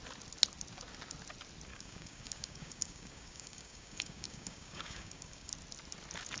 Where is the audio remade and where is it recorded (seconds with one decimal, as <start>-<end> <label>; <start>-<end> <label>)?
0.0-1.7 recorded; 1.7-5.5 remade; 5.5-6.4 recorded